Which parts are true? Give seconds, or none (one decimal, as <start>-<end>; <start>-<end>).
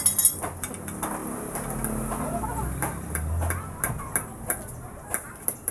0.0-5.7